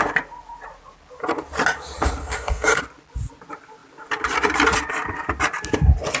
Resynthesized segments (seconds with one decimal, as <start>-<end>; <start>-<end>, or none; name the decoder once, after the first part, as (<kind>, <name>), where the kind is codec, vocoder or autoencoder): 2.2-2.8 (codec, SNAC)